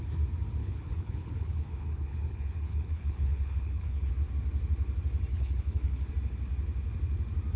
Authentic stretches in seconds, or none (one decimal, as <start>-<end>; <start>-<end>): 0.0-0.6; 4.1-5.3; 6.1-7.6

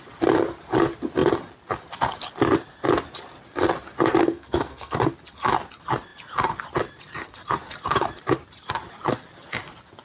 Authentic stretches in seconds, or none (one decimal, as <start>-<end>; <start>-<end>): 0.0-4.2; 5.1-10.0

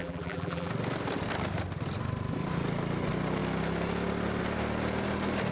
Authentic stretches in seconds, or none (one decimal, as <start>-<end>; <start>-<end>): 0.7-5.5

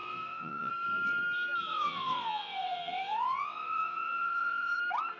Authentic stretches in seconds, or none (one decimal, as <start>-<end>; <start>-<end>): 0.7-1.7; 4.8-5.2

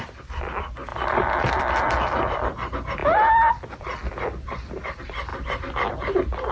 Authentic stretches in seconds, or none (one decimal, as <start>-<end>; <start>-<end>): 0.0-6.5

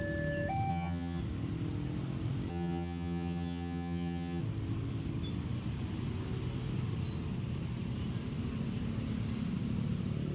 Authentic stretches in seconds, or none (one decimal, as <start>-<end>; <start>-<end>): 0.0-0.7; 1.2-2.5; 4.4-10.3

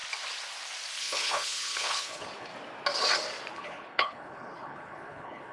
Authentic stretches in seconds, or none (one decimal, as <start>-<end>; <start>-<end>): 0.0-1.0; 2.5-3.5